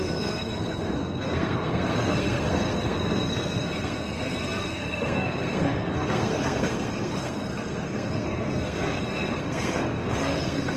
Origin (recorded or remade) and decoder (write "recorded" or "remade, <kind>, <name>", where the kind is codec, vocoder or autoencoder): remade, codec, SNAC